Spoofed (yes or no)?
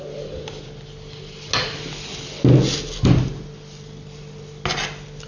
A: no